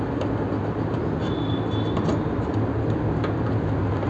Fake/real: real